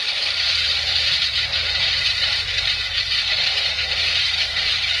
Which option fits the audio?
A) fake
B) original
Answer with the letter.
A